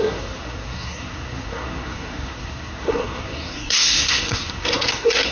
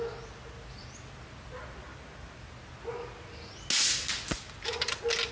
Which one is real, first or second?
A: second